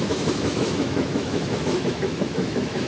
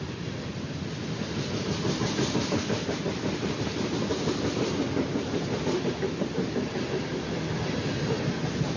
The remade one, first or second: first